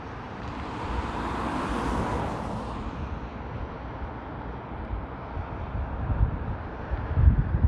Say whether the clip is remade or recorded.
recorded